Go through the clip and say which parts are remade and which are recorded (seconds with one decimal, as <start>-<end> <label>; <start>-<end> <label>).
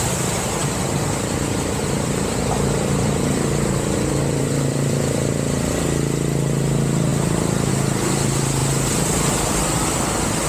0.0-0.6 recorded; 0.6-5.7 remade; 5.7-10.5 recorded